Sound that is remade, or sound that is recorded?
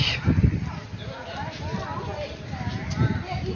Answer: recorded